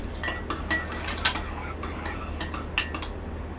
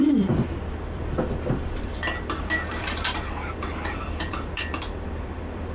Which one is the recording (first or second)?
first